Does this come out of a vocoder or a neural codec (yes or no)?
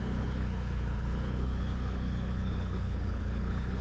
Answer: yes